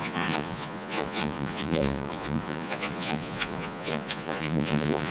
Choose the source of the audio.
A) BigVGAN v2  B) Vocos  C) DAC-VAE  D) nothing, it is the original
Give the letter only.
B